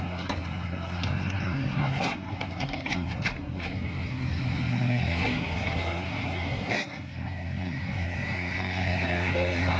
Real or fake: fake